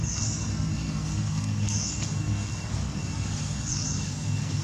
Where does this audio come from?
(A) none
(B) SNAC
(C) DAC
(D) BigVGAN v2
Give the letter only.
B